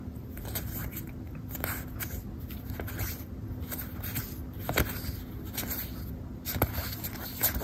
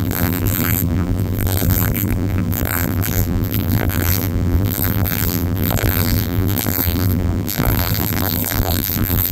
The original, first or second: first